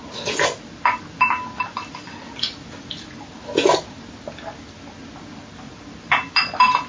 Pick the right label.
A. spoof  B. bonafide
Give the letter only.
B